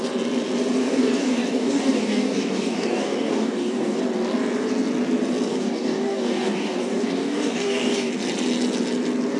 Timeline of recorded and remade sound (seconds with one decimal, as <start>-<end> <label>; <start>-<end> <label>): 0.0-0.8 recorded; 0.8-4.0 remade; 4.0-5.5 recorded; 5.5-8.1 remade; 8.1-9.4 recorded